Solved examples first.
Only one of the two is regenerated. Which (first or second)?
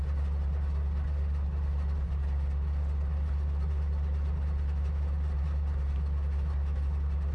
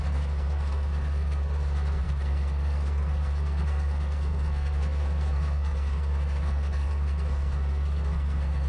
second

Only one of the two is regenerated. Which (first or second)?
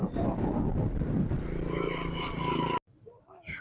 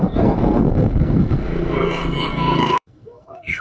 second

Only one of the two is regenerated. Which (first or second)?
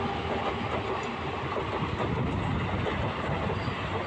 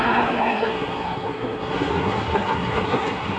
second